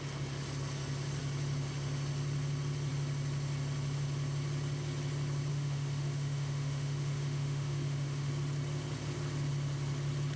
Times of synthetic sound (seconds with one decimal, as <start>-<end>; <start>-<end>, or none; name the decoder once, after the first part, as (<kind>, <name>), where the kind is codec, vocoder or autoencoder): 5.5-8.3 (autoencoder, DAC-VAE)